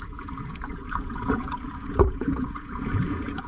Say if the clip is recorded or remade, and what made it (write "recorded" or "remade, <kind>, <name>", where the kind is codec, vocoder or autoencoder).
remade, vocoder, Vocos